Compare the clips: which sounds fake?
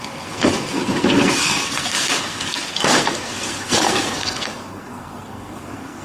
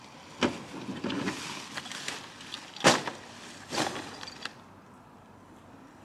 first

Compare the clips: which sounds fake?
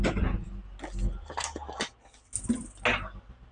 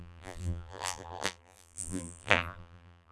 second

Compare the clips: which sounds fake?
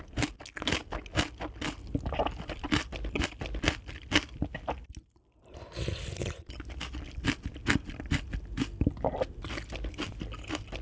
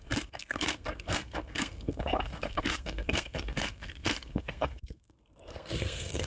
second